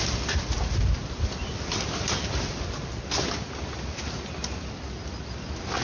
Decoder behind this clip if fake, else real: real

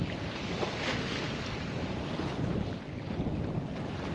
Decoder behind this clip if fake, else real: real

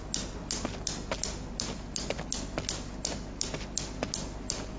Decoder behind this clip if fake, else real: real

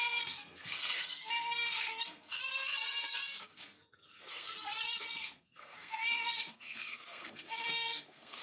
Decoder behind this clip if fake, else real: fake, codec, SNAC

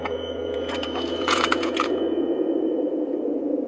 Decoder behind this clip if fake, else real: fake, vocoder, Vocos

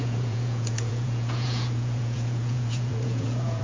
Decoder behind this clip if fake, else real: fake, vocoder, Vocos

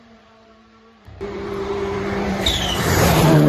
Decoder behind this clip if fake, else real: fake, vocoder, BigVGAN v2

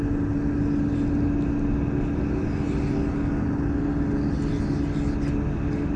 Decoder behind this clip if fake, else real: real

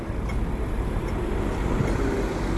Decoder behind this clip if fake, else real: real